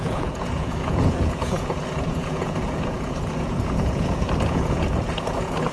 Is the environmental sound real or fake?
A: fake